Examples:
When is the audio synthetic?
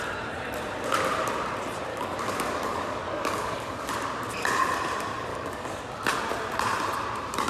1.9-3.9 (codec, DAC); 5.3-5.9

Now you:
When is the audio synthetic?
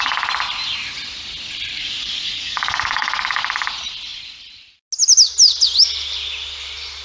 1.7-3.4 (codec, DAC)